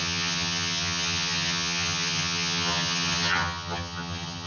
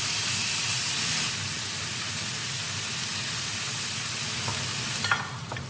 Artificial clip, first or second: first